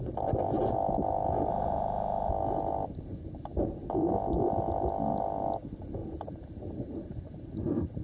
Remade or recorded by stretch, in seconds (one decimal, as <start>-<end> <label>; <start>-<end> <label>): 0.0-1.5 recorded; 1.5-2.3 remade; 2.3-8.0 recorded